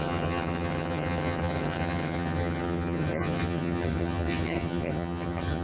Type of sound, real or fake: fake